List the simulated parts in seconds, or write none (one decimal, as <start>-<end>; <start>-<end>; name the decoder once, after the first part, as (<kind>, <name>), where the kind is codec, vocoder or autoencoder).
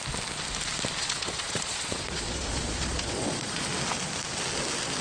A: 1.0-3.7 (vocoder, Vocos)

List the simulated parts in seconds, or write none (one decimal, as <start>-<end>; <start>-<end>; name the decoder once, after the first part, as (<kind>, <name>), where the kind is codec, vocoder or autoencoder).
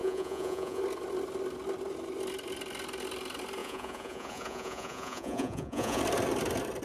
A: 0.0-0.8 (vocoder, Vocos); 3.6-6.0